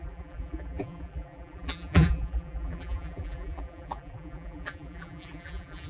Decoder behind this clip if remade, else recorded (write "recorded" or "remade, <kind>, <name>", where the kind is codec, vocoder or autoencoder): remade, vocoder, BigVGAN v2